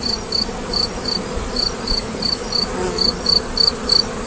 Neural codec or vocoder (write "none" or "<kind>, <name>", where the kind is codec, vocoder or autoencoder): none